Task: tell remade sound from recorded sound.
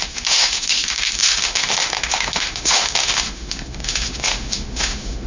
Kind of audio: remade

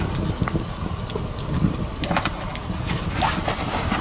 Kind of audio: recorded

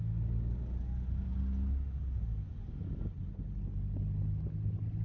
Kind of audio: recorded